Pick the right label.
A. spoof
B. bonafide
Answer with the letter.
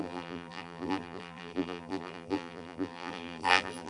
A